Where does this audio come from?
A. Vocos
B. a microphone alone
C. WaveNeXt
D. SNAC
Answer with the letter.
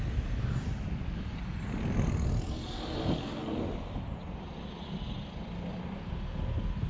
B